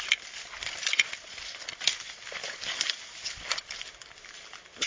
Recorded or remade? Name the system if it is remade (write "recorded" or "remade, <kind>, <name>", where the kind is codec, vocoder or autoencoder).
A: recorded